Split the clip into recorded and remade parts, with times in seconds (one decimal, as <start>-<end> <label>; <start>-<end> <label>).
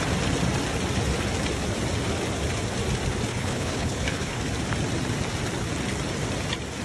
0.0-3.3 recorded; 3.3-4.4 remade; 4.4-6.8 recorded